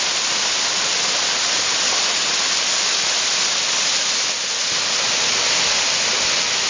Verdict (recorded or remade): recorded